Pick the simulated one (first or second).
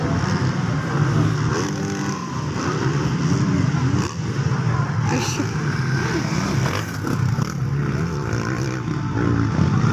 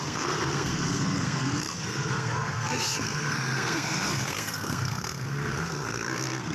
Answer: second